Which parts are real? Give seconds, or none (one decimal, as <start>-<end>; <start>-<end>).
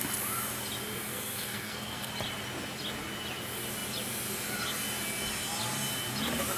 0.0-1.1; 2.1-6.6